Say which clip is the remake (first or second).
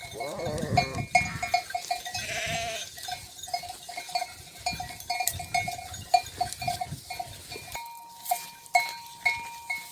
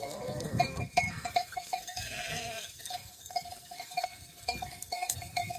second